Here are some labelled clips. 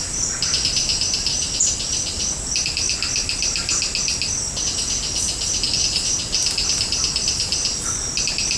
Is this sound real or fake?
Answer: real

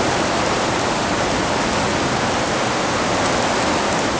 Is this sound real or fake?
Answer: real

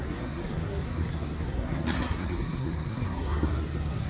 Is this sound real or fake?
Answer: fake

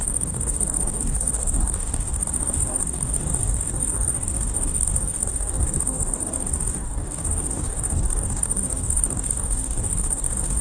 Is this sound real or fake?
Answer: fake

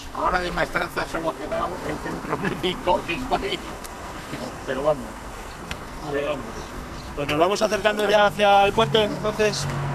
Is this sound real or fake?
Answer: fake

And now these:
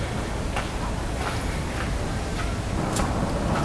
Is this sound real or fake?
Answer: real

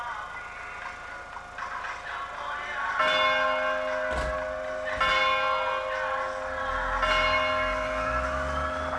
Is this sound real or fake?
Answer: real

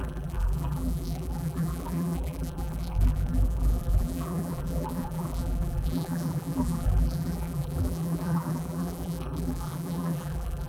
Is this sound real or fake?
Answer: fake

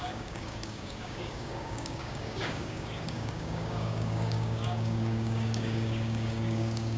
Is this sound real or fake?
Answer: fake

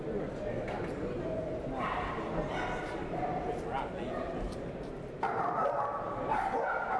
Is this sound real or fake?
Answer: real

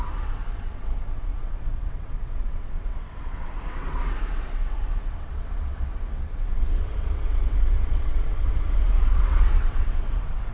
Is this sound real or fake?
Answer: fake